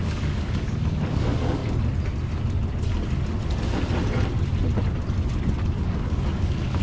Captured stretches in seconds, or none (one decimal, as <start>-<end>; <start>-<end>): 1.6-5.7